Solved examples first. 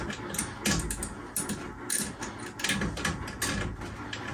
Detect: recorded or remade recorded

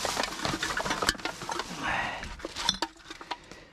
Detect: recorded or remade recorded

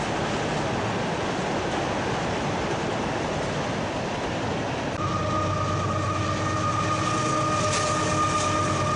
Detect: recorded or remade recorded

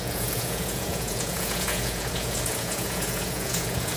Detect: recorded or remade remade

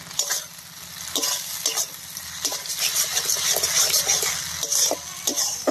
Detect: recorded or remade recorded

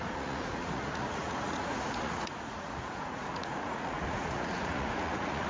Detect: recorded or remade remade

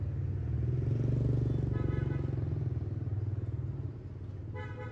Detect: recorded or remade recorded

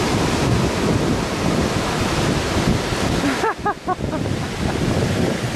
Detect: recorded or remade recorded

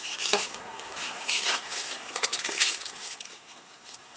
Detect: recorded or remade remade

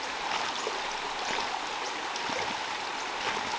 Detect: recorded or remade recorded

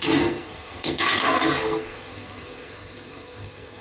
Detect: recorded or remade remade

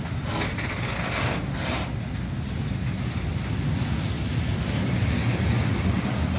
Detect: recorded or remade recorded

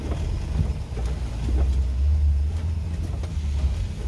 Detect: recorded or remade recorded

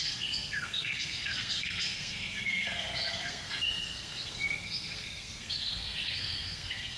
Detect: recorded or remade remade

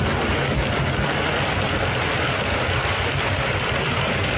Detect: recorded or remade recorded